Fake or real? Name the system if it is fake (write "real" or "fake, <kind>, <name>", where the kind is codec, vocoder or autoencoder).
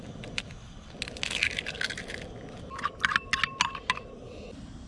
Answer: real